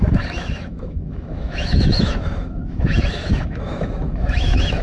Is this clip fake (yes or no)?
yes